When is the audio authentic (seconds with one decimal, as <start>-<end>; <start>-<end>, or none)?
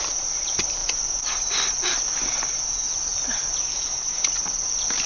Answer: 0.0-3.7; 4.3-5.1